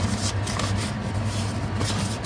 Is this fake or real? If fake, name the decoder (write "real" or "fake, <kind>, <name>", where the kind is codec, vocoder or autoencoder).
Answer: real